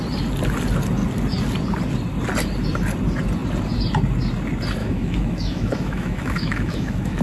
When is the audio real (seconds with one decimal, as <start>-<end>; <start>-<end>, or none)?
0.0-4.8